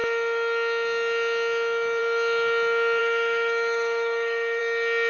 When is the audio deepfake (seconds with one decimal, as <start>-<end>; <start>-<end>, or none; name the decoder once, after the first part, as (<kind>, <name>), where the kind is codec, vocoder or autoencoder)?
3.0-4.6 (autoencoder, DAC-VAE)